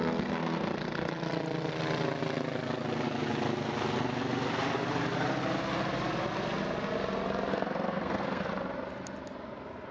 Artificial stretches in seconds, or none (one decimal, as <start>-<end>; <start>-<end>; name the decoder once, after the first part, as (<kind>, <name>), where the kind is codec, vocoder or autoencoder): 0.0-1.1 (codec, SNAC); 7.5-8.5